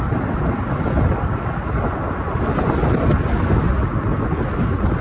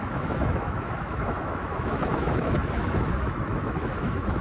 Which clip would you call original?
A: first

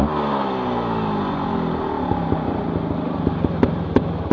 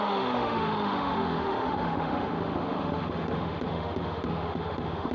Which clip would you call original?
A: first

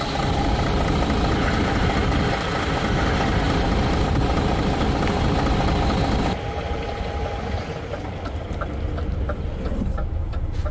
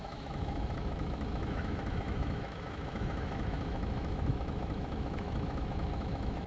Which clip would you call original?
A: first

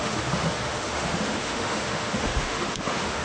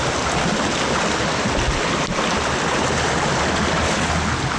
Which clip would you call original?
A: second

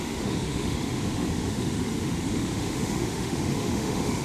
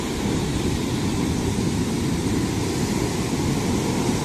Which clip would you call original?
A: second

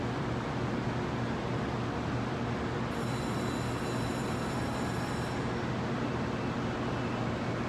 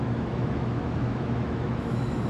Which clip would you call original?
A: first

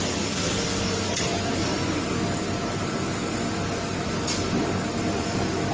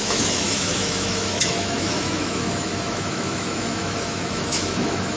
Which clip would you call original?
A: first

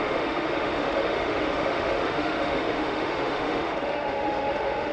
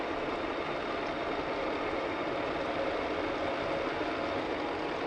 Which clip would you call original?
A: second